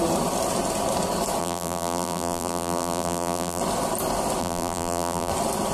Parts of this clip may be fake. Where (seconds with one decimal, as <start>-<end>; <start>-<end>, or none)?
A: 1.4-3.6; 4.4-5.3